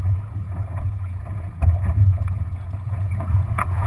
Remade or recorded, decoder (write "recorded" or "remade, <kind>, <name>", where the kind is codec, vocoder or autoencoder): remade, vocoder, Vocos